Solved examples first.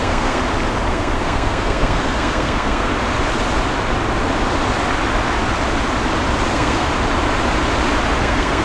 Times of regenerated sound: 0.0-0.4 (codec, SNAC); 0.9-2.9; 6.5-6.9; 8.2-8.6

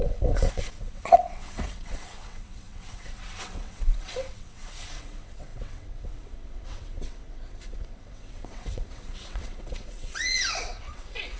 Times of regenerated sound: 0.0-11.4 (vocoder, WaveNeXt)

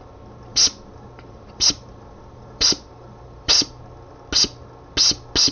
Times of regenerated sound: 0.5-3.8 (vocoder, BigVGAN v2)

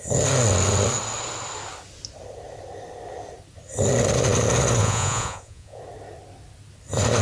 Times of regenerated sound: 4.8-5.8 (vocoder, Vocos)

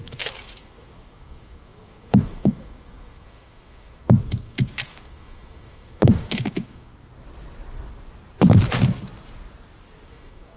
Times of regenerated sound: 0.0-6.9 (autoencoder, DAC-VAE); 10.1-10.6

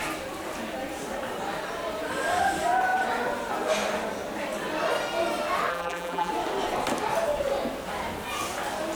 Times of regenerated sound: 5.7-6.3 (vocoder, BigVGAN v2)